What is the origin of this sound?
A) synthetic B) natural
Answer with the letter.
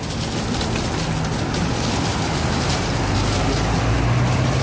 B